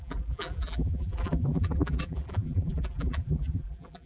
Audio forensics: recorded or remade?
remade